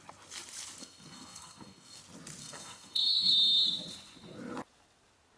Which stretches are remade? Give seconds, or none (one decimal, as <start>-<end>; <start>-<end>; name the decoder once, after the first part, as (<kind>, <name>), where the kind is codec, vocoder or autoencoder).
0.8-2.0 (codec, SNAC); 2.4-3.3